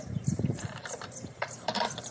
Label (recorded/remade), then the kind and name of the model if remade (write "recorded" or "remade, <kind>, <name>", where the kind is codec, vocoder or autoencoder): remade, vocoder, BigVGAN v2